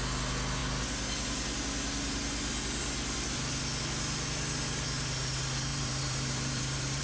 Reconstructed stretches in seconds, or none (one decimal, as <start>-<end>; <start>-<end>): 5.7-7.0